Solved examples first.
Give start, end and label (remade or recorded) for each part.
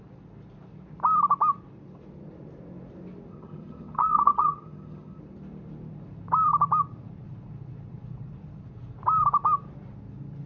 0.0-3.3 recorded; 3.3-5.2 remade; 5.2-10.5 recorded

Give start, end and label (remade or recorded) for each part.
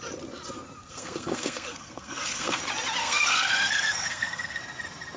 0.0-0.8 recorded; 0.8-2.6 remade; 2.6-3.0 recorded; 3.0-4.6 remade; 4.6-5.2 recorded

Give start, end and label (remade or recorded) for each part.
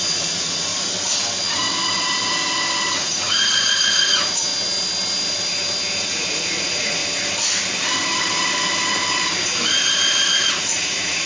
0.0-0.7 remade; 0.7-2.9 recorded; 2.9-4.5 remade; 4.5-6.0 recorded; 6.0-7.0 remade; 7.0-10.5 recorded; 10.5-11.3 remade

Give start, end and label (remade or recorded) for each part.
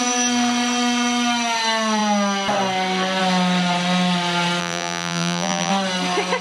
0.0-4.6 recorded; 4.6-5.7 remade; 5.7-6.4 recorded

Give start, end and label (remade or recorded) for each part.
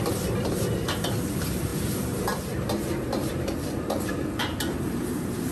0.0-5.5 recorded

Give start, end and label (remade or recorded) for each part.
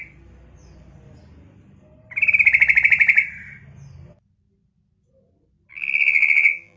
0.0-5.7 recorded; 5.7-6.8 remade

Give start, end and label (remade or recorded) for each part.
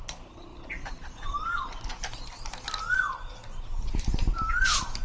0.0-0.5 recorded; 0.5-1.3 remade; 1.3-5.0 recorded